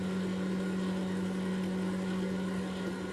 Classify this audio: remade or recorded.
recorded